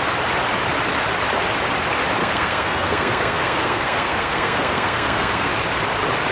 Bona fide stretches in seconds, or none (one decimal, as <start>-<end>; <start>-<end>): 0.0-2.2; 5.5-6.3